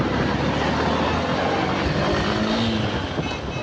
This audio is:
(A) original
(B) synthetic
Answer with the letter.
A